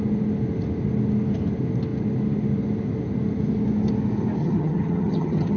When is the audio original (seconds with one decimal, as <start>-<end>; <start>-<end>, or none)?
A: 0.0-4.4